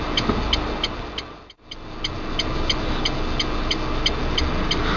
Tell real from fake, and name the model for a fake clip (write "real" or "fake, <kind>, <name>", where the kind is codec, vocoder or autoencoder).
real